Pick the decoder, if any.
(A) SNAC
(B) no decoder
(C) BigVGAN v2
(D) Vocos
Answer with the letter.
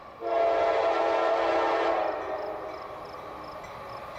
B